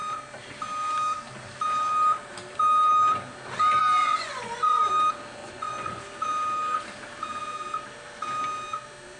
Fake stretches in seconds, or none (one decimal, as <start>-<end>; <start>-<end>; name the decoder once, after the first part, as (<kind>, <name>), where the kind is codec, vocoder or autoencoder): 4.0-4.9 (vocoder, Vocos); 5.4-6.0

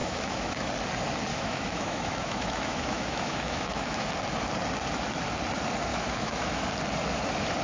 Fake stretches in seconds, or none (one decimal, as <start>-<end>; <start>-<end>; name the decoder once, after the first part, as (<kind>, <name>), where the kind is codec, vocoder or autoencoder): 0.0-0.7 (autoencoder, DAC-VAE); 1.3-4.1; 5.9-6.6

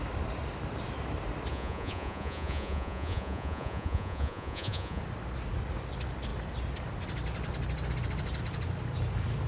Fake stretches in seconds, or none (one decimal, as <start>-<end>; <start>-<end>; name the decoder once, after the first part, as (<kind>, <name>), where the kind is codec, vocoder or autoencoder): 1.5-5.0 (vocoder, Vocos)